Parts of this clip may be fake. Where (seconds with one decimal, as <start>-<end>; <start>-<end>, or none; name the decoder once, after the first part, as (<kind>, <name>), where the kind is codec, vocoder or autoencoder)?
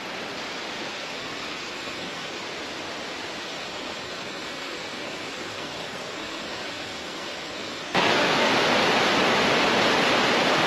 0.8-2.4 (codec, SNAC); 3.4-8.5